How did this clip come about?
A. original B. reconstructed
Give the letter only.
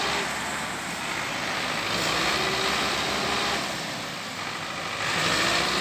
A